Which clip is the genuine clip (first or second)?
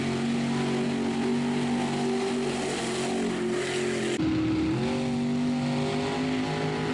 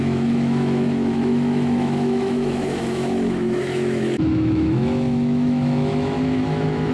first